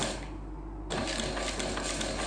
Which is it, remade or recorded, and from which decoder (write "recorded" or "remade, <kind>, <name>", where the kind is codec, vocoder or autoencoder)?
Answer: recorded